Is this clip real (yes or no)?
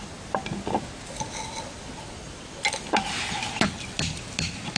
yes